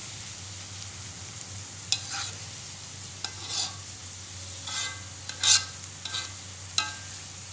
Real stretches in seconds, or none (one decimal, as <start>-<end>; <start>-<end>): 0.0-7.5